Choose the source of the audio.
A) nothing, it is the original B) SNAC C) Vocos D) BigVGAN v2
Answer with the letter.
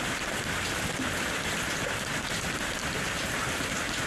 A